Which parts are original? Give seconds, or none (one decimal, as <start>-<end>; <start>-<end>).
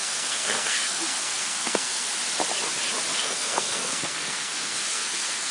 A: 2.1-3.1